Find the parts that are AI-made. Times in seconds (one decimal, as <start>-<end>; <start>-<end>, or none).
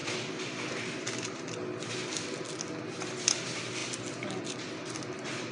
3.8-5.5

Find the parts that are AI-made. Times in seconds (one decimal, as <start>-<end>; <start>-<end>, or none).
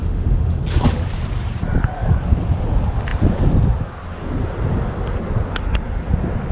0.0-0.6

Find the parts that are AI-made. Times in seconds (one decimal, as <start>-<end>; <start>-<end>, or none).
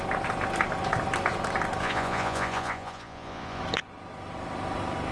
1.8-3.6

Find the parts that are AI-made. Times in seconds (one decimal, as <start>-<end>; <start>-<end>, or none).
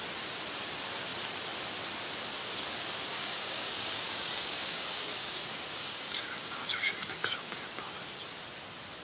3.1-7.6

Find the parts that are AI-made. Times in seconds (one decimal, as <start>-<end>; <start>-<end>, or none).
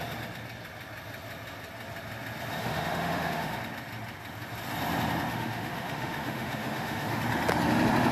2.6-3.6; 5.3-7.2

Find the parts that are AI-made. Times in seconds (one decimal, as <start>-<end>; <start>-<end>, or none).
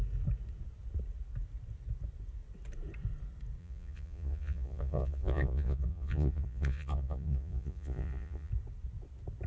3.6-8.5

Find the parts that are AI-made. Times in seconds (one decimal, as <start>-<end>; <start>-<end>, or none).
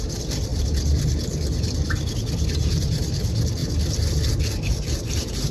2.6-3.2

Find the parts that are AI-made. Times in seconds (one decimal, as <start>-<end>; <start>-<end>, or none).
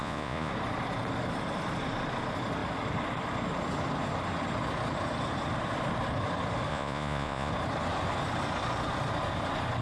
0.0-0.5; 6.7-7.5